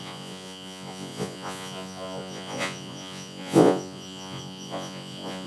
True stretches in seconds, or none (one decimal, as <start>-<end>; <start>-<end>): none